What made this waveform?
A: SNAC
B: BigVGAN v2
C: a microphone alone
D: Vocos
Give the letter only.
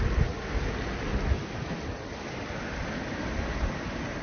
C